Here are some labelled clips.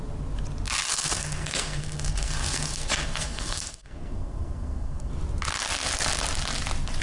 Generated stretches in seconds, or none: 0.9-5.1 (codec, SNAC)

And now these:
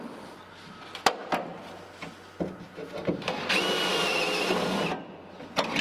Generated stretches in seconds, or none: none

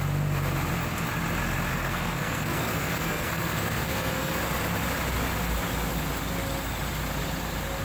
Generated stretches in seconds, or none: 1.7-4.4 (codec, SNAC)

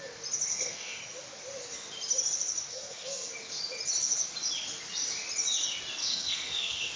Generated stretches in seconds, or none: 0.5-1.0 (codec, SNAC); 2.7-3.3; 6.0-7.0

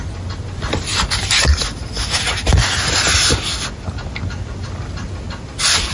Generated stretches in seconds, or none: none

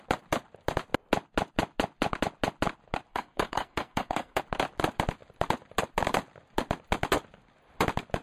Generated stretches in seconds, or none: 3.1-4.4 (codec, SNAC)

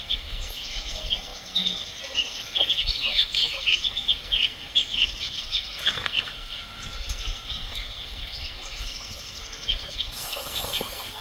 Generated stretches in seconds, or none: 0.0-11.2 (codec, SNAC)